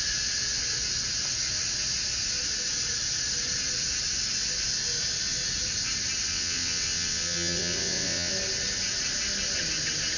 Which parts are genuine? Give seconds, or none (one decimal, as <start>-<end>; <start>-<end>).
0.0-6.3; 8.3-10.2